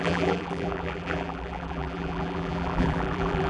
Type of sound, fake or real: fake